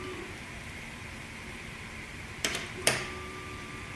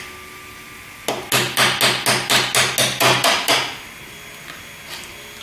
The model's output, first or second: first